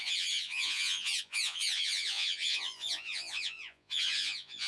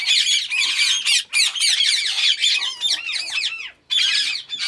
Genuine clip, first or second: second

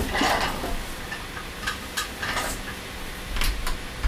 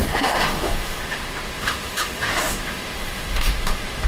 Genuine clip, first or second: first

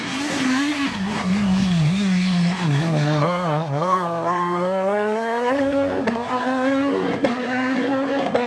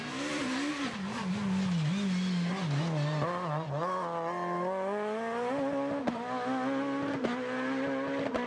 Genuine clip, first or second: second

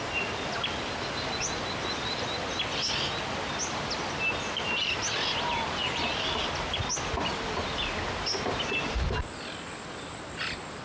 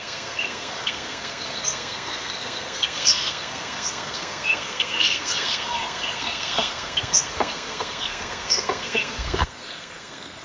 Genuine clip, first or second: first